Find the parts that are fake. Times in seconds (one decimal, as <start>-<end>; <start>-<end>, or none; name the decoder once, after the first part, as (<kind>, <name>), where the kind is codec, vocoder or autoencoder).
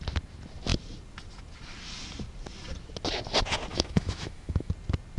3.7-4.7 (autoencoder, DAC-VAE)